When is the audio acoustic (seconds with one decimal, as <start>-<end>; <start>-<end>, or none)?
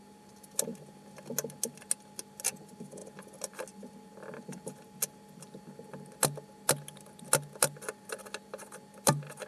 0.0-9.5